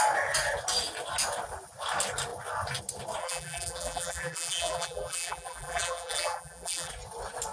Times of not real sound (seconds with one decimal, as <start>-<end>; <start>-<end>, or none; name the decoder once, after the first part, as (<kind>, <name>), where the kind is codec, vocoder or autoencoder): 3.2-6.9 (vocoder, BigVGAN v2)